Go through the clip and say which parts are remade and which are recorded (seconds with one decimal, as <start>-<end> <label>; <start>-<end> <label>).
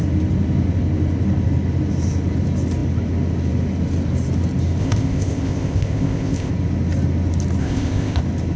0.0-4.8 recorded; 4.8-6.5 remade; 6.5-7.6 recorded; 7.6-8.2 remade; 8.2-8.6 recorded